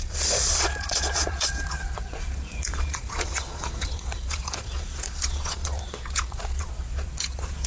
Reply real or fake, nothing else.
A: fake